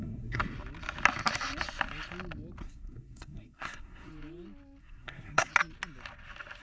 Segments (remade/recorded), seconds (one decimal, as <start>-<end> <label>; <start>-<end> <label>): 0.0-0.4 remade; 0.4-2.6 recorded; 2.6-4.1 remade; 4.1-4.8 recorded; 4.8-5.5 remade; 5.5-6.6 recorded